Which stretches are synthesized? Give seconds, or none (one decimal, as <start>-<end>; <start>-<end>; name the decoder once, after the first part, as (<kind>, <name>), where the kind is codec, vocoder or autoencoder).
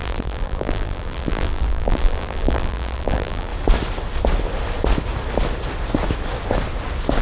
0.0-3.5 (vocoder, BigVGAN v2)